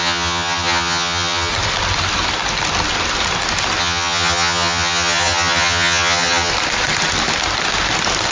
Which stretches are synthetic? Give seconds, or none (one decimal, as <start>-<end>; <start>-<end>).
0.0-1.5; 3.8-6.5